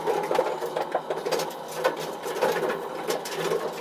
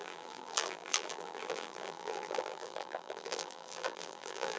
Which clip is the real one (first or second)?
first